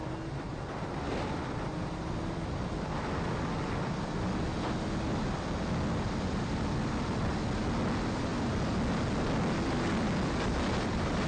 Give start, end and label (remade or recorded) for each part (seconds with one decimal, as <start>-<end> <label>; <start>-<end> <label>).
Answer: 0.0-11.3 recorded